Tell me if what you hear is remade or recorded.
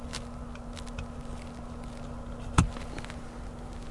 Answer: recorded